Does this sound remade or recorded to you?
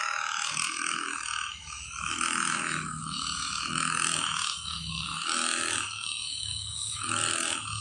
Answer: remade